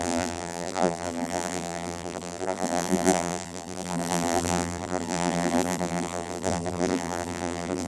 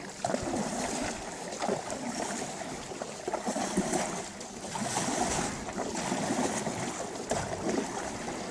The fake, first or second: first